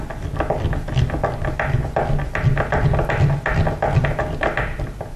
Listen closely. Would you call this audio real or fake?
real